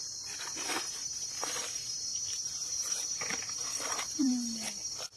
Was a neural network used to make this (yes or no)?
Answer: yes